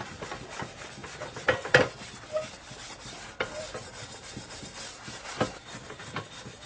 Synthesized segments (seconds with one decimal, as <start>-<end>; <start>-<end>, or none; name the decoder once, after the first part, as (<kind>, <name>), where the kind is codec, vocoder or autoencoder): none